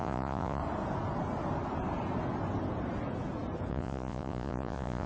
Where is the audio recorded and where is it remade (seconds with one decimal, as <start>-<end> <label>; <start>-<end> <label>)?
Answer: 0.0-0.6 remade; 0.6-3.7 recorded; 3.7-5.1 remade